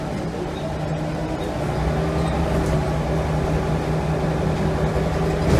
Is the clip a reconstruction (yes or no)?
no